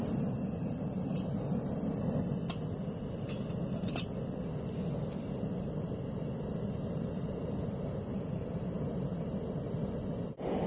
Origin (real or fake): real